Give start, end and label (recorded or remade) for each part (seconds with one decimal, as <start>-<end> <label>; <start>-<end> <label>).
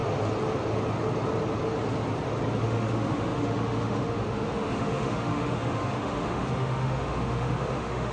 0.0-2.6 recorded; 2.6-8.1 remade